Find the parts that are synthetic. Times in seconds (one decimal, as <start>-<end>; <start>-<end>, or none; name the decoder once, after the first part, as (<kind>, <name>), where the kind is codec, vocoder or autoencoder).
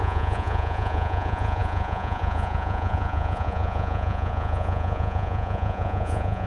0.0-6.5 (vocoder, Vocos)